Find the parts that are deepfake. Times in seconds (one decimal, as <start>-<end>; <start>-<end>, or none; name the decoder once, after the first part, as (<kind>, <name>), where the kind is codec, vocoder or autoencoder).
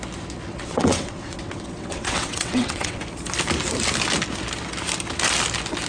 0.5-3.0 (vocoder, WaveNeXt)